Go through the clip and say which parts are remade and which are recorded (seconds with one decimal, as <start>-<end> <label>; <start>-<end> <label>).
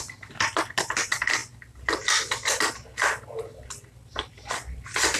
0.0-5.2 recorded